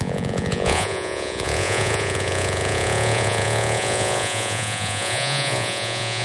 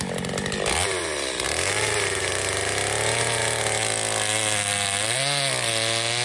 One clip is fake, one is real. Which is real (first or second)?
second